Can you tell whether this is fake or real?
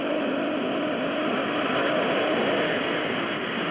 real